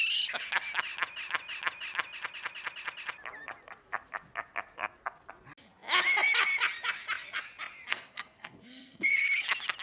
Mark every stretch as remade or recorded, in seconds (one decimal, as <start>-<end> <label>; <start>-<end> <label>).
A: 0.0-7.9 recorded; 7.9-9.2 remade; 9.2-9.8 recorded